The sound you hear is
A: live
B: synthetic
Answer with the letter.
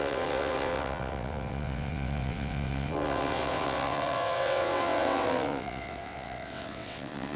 B